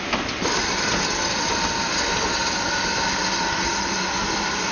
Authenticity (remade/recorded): recorded